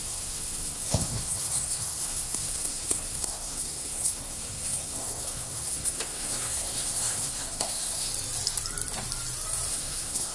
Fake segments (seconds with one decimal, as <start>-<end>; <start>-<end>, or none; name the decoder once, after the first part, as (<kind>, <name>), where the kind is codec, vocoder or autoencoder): 0.0-8.1 (codec, SNAC); 9.7-10.3